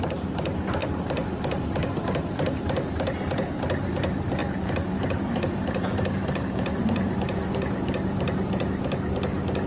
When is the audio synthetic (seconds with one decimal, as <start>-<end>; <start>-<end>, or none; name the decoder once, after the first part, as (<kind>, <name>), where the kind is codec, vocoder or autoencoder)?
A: 0.8-1.6 (vocoder, BigVGAN v2); 4.4-7.9